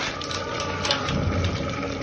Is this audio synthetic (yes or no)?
yes